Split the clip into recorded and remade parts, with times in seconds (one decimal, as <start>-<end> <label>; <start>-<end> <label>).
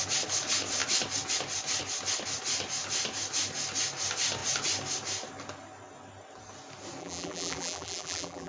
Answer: 0.0-7.0 recorded; 7.0-8.5 remade